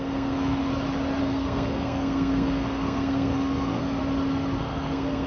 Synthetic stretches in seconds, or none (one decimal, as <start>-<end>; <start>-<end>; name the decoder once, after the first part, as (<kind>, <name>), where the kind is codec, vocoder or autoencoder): 0.0-0.7 (codec, SNAC); 1.2-4.0; 4.6-5.3